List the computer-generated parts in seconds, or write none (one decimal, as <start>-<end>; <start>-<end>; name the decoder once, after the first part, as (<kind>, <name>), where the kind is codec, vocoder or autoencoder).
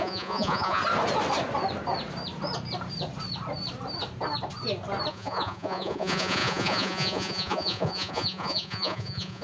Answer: 0.0-0.8 (vocoder, Vocos); 5.1-9.4